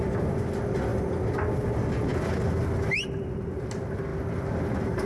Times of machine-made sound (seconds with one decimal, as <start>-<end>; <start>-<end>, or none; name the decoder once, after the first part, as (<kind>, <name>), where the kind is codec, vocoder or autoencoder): none